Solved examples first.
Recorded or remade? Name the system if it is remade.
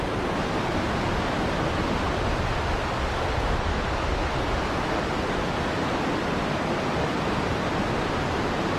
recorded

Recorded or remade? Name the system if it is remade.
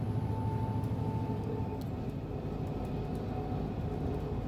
recorded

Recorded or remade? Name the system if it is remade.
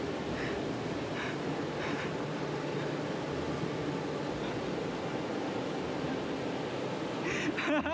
recorded